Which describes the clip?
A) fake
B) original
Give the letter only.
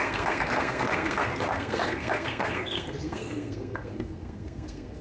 A